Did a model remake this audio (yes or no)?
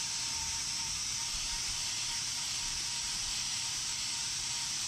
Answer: yes